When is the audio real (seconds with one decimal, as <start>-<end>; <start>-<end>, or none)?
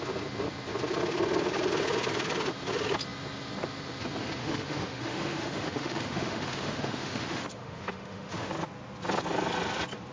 0.0-4.4; 8.5-10.1